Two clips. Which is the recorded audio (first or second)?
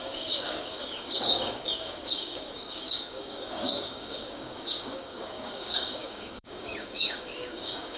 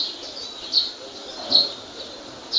second